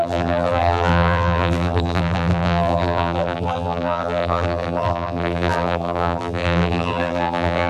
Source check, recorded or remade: remade